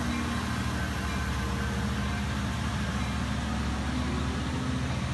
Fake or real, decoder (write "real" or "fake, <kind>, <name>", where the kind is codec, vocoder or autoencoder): real